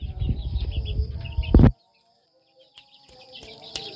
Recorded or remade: recorded